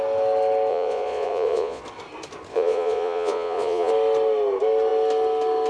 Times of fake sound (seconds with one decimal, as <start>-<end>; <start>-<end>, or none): 0.7-1.8; 2.5-3.9